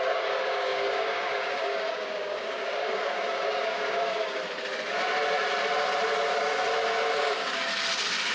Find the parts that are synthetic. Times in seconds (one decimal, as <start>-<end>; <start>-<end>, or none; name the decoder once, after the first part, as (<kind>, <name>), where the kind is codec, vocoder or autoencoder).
0.0-4.4 (codec, DAC); 7.2-7.7